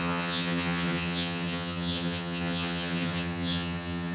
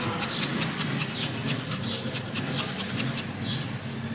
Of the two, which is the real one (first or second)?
second